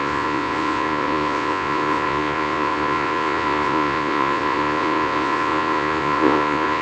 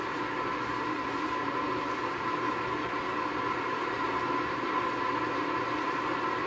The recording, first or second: second